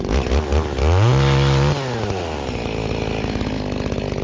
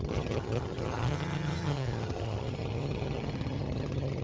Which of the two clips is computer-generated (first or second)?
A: second